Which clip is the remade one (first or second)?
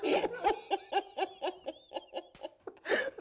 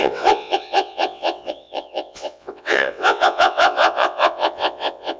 second